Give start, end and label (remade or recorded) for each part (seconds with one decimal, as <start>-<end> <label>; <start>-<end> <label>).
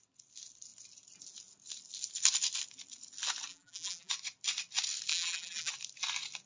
0.0-3.5 recorded; 3.5-4.1 remade; 4.1-5.1 recorded; 5.1-5.7 remade; 5.7-6.5 recorded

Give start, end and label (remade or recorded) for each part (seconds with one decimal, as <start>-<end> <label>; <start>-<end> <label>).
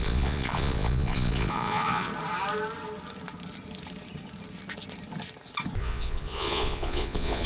0.0-2.1 remade; 2.1-5.8 recorded; 5.8-7.5 remade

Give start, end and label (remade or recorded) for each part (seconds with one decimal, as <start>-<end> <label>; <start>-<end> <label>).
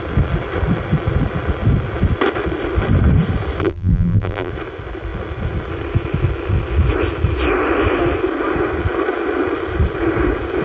0.0-3.6 recorded; 3.6-4.5 remade; 4.5-10.6 recorded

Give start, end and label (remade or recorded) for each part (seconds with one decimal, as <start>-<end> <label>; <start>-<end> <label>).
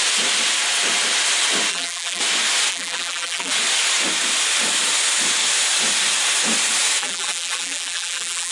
0.0-1.7 recorded; 1.7-2.2 remade; 2.2-2.7 recorded; 2.7-3.5 remade; 3.5-7.0 recorded; 7.0-8.5 remade